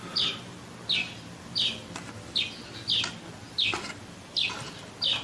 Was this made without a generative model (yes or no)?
yes